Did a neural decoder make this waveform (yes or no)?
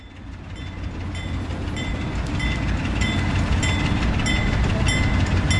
no